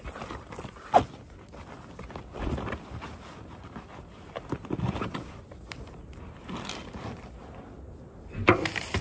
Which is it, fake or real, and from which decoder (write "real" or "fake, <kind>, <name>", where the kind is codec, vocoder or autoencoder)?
real